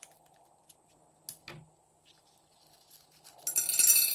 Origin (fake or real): real